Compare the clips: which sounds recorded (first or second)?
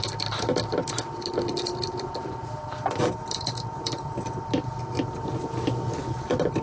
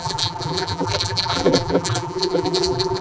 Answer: first